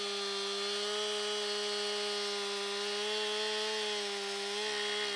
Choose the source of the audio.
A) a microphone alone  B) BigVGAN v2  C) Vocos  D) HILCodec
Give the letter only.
A